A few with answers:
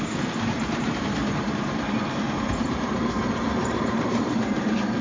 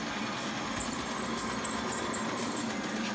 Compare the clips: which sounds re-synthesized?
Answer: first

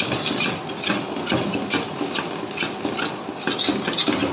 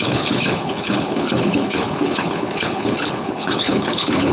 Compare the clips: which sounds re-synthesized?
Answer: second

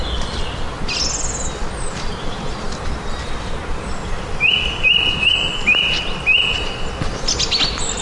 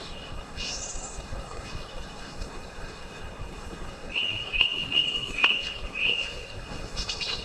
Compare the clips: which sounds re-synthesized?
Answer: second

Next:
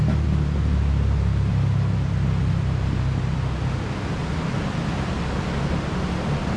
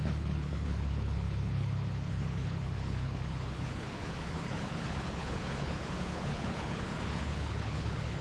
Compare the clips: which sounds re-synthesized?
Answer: second